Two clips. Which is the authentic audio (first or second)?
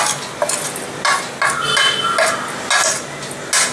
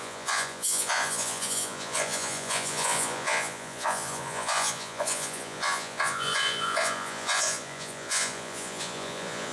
first